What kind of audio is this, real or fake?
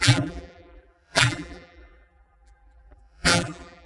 fake